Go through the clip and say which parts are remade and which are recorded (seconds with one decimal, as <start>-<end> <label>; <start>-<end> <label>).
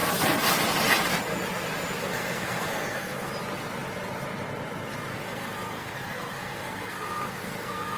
0.0-2.0 recorded; 2.0-3.3 remade; 3.3-5.1 recorded; 5.1-8.0 remade